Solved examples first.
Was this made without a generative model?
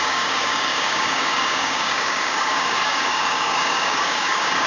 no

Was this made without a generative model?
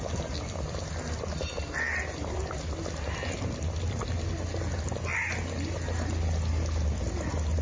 yes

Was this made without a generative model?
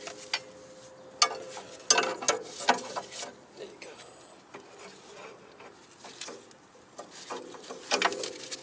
yes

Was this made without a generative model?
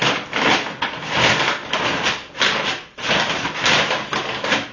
yes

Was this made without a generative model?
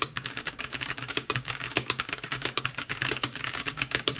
no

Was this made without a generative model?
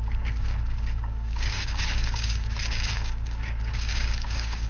no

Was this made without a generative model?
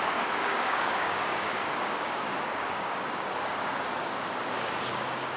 no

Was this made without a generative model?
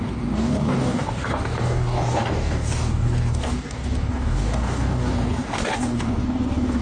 no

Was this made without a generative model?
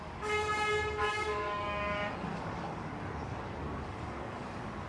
no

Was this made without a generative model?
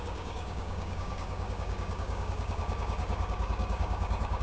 no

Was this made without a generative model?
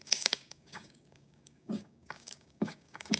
no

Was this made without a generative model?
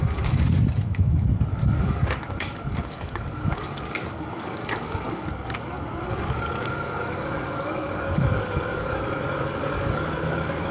no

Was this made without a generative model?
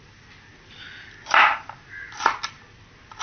yes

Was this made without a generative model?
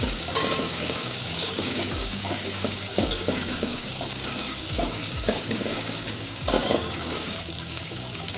no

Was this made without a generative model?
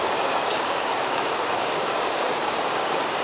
no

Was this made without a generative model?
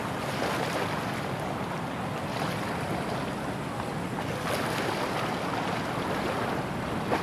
yes